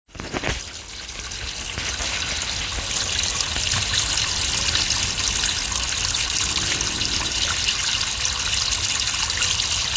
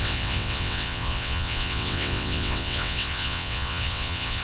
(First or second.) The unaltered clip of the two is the first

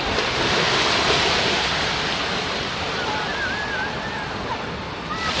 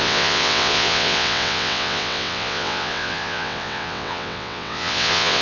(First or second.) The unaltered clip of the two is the first